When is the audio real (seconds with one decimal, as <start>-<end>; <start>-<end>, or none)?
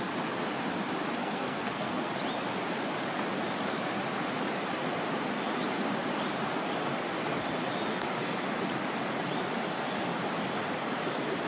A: 0.0-1.2; 2.1-11.5